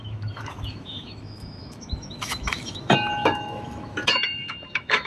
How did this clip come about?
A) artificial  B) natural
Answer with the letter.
A